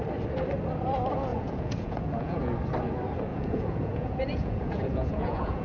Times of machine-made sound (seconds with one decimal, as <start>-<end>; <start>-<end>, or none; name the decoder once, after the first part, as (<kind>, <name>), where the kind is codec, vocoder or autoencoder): 1.3-2.4 (vocoder, Vocos); 3.3-5.6